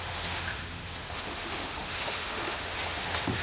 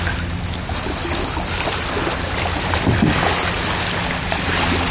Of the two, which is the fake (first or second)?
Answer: first